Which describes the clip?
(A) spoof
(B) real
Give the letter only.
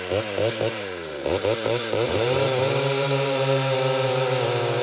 A